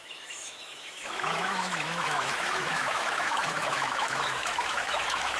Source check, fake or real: fake